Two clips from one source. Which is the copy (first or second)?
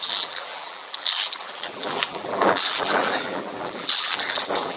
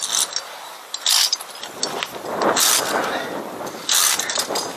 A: first